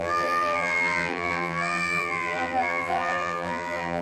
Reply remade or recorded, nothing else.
remade